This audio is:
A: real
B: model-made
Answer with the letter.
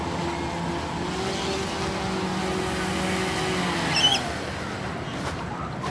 A